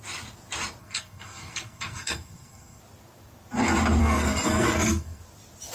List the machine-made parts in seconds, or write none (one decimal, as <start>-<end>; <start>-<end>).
0.8-2.8; 4.0-5.2